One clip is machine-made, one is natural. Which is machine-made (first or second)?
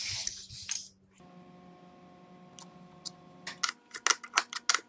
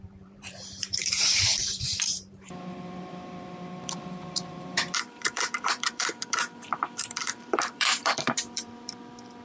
second